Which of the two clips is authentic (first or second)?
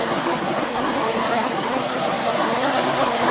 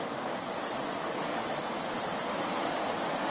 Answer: second